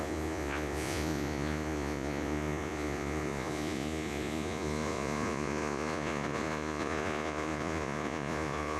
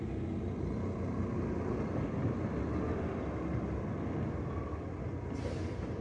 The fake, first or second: first